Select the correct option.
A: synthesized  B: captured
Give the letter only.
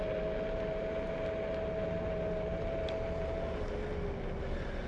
B